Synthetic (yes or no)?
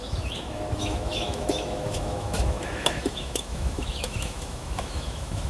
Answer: yes